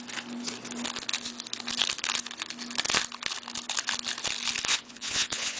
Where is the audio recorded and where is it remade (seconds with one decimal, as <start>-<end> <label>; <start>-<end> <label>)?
0.0-4.7 recorded; 4.7-5.6 remade